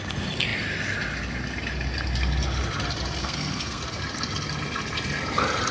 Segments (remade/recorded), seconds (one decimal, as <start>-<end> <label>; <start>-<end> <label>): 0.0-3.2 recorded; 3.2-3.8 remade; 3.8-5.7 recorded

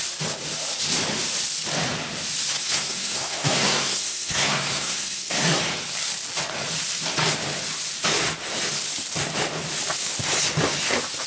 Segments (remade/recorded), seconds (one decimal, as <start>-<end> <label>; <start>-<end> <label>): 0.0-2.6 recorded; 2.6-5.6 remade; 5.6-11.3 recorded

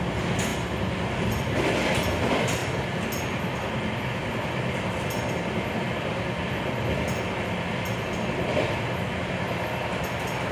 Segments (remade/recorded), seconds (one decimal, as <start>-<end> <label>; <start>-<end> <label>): 0.0-10.5 recorded

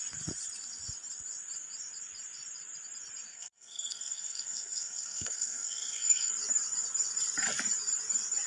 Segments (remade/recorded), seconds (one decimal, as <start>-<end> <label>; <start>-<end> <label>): 0.0-3.3 recorded; 3.3-6.3 remade; 6.3-8.5 recorded

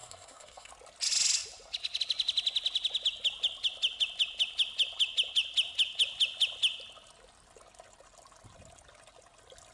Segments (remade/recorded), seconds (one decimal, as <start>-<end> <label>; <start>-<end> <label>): 0.0-0.7 remade; 0.7-9.7 recorded